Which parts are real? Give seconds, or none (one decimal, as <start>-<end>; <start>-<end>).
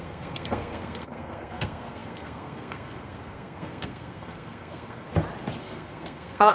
5.1-5.6